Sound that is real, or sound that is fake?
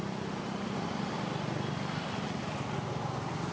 real